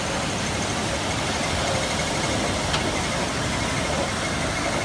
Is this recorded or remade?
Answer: recorded